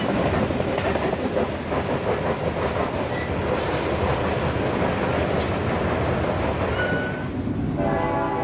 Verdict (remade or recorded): recorded